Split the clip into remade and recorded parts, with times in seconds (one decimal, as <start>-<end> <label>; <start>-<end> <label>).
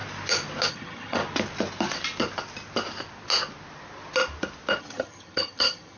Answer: 0.0-0.7 recorded; 0.7-1.2 remade; 1.2-4.8 recorded; 4.8-6.0 remade